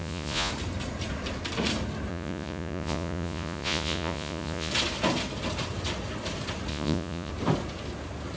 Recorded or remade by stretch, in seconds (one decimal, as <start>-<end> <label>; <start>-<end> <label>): 0.0-0.5 remade; 0.5-2.1 recorded; 2.1-4.7 remade; 4.7-6.7 recorded; 6.7-7.3 remade; 7.3-8.4 recorded